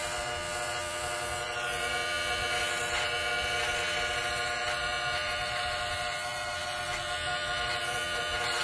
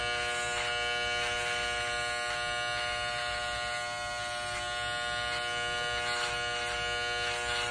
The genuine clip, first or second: second